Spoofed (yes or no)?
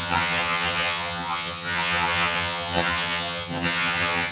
yes